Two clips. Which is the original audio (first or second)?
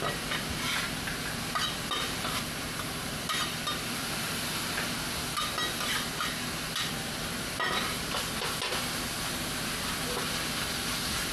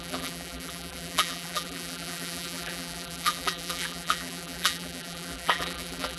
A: first